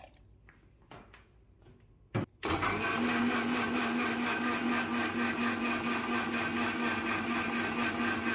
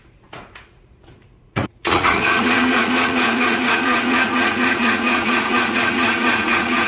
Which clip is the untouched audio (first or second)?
first